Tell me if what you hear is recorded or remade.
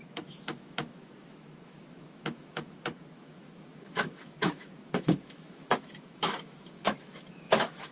remade